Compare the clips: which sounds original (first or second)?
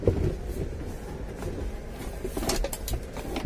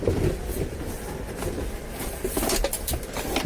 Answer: first